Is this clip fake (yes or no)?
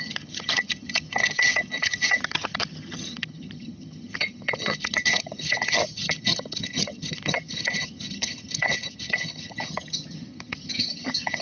yes